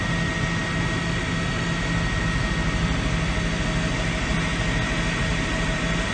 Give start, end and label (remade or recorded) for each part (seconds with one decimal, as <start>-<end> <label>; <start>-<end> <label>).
0.0-5.3 recorded; 5.3-6.1 remade